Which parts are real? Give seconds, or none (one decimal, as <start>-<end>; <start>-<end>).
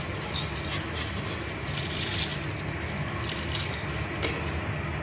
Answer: 0.0-5.0